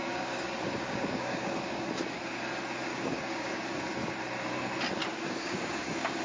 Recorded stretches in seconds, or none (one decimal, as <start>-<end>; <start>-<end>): 1.8-2.9; 3.5-5.0